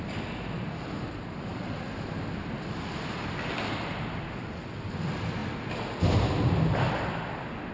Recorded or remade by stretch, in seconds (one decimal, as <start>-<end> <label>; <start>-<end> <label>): 0.0-7.7 recorded